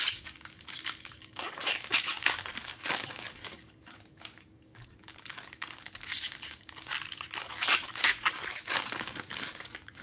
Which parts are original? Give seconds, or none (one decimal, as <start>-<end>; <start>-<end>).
6.9-7.4